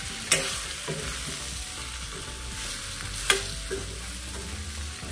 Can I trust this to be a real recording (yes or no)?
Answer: yes